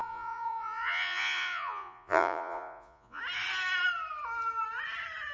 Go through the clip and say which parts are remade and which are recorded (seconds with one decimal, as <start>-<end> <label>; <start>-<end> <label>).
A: 0.0-3.2 remade; 3.2-5.3 recorded